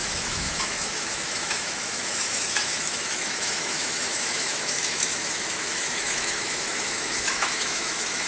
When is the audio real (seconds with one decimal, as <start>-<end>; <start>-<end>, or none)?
none